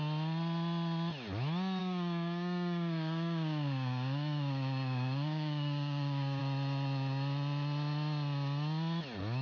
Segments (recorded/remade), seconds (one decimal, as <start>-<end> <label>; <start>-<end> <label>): 0.0-1.8 recorded; 1.8-6.4 remade; 6.4-9.4 recorded